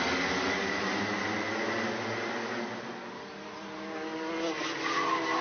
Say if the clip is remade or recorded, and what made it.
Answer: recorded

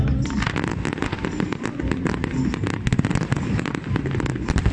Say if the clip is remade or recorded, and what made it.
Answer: recorded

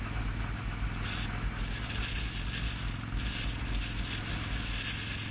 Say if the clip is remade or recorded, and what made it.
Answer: recorded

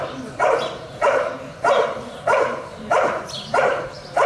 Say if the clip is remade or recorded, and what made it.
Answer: remade, vocoder, BigVGAN v2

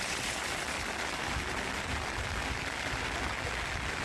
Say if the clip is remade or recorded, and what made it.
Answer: recorded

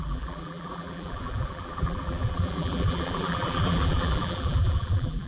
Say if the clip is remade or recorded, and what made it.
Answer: remade, vocoder, BigVGAN v2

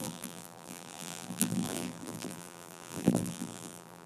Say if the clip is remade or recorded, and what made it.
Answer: remade, vocoder, BigVGAN v2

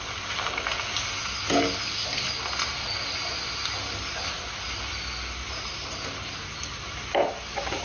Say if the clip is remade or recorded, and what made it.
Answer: recorded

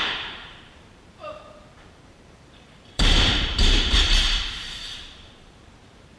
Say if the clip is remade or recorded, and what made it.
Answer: remade, vocoder, BigVGAN v2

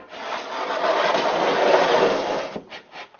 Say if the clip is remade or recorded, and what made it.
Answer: recorded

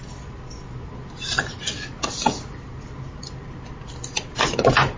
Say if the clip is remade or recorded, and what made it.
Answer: recorded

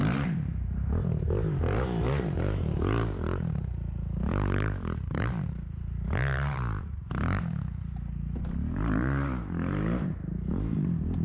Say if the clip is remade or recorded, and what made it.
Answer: remade, vocoder, BigVGAN v2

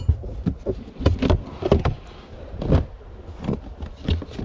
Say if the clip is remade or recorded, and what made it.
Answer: recorded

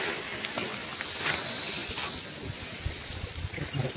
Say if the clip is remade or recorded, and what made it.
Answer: recorded